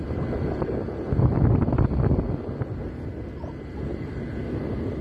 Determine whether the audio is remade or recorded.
recorded